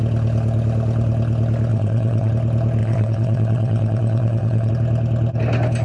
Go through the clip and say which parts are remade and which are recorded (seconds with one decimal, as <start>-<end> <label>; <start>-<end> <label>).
0.0-1.7 recorded; 1.7-2.3 remade; 2.3-2.8 recorded; 2.8-4.7 remade; 4.7-5.8 recorded